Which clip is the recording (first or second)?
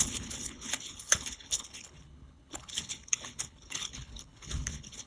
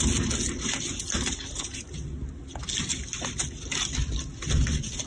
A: second